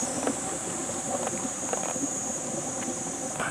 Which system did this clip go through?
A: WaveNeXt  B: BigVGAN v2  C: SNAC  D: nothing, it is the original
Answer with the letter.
B